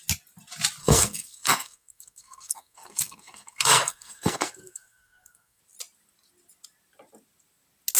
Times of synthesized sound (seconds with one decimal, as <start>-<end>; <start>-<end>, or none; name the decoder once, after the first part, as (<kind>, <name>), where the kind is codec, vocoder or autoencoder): 0.8-5.6 (codec, SNAC)